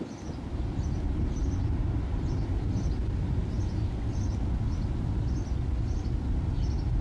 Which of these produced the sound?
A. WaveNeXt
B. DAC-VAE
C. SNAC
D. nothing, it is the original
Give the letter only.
D